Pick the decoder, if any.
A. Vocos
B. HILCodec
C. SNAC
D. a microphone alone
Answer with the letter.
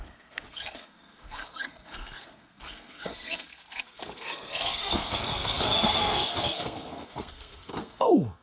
C